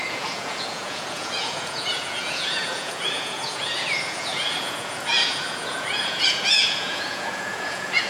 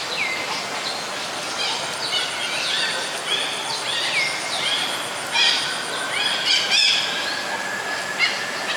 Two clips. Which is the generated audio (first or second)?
first